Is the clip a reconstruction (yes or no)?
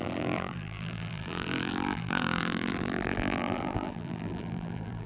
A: yes